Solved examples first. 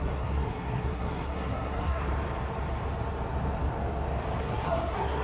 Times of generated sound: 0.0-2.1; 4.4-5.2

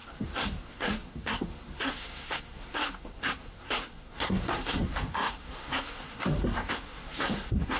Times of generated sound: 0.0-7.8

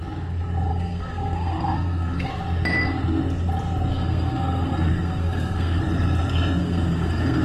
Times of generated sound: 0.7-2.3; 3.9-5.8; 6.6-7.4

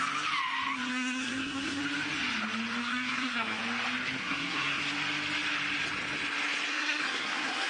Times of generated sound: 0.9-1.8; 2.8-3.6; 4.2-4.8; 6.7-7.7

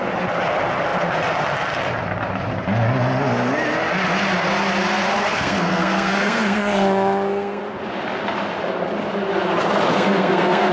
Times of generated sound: 5.3-7.6; 9.9-10.7